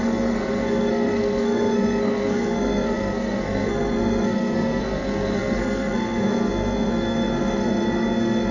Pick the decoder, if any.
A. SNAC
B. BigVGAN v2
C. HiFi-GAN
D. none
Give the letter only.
A